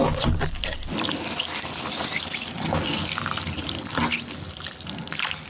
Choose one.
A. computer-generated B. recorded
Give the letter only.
B